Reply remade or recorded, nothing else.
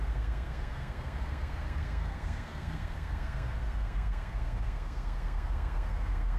remade